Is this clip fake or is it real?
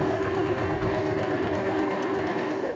fake